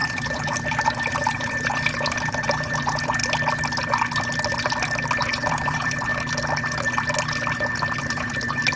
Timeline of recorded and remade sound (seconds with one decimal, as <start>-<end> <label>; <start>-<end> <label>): 0.0-3.2 remade; 3.2-5.2 recorded; 5.2-6.1 remade; 6.1-8.0 recorded; 8.0-8.8 remade